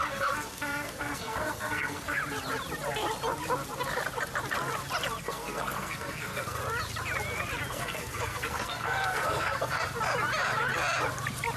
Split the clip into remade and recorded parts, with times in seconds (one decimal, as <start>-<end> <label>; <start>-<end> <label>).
0.0-2.2 remade; 2.2-5.2 recorded; 5.2-6.6 remade; 6.6-7.7 recorded; 7.7-9.8 remade; 9.8-11.6 recorded